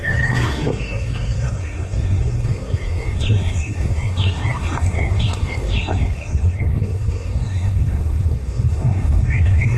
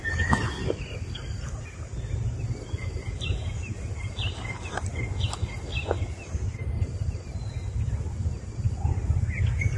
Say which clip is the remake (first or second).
first